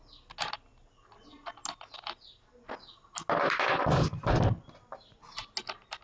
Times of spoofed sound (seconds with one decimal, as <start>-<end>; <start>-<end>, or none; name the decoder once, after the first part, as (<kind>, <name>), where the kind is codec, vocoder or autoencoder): none